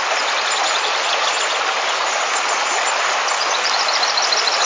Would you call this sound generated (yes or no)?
no